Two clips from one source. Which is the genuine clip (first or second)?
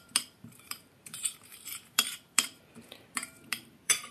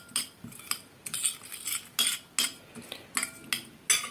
second